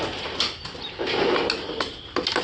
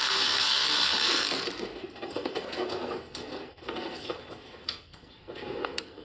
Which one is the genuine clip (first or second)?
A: first